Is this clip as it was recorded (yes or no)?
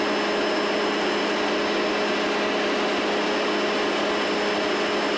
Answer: yes